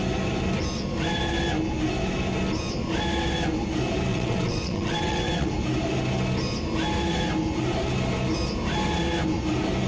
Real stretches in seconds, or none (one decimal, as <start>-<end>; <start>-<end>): 0.0-4.1; 5.5-9.9

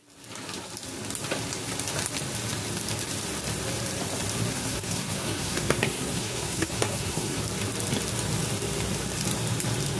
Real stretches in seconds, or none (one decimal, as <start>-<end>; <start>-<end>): 0.0-4.5; 7.4-10.0

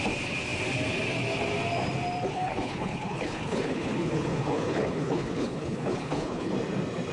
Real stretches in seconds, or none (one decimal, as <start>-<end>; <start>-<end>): 0.0-2.3; 6.5-7.1

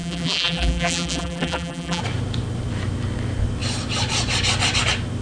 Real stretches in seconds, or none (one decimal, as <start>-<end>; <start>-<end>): 2.0-5.2